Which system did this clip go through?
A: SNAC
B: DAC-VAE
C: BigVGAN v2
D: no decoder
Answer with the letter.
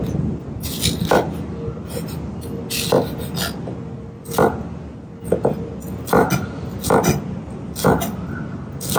D